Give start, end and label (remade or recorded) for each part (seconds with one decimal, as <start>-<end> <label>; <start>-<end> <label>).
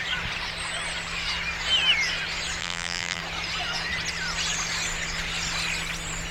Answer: 0.0-2.6 recorded; 2.6-3.2 remade; 3.2-6.3 recorded